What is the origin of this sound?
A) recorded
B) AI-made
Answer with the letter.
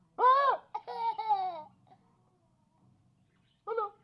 A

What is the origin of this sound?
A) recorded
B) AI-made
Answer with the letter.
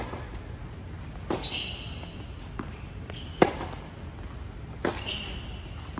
A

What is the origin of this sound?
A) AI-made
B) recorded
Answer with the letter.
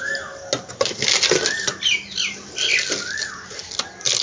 B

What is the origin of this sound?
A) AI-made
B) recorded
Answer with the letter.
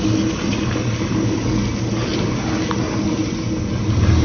B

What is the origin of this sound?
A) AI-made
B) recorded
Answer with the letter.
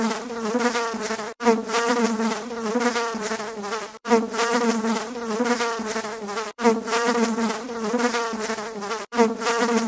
A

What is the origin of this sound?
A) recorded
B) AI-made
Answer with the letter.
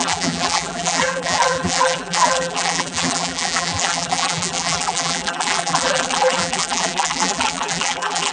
B